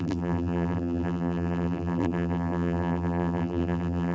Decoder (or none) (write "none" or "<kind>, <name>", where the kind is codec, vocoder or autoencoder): vocoder, BigVGAN v2